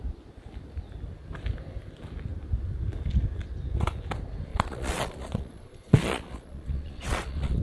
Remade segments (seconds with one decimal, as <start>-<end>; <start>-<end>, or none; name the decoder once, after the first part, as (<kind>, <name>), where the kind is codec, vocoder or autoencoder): 4.5-7.6 (vocoder, Vocos)